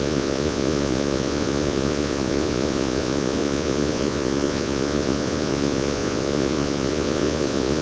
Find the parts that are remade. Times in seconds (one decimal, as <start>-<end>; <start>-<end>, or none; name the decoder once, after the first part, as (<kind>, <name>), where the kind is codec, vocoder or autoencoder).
0.0-7.8 (vocoder, Vocos)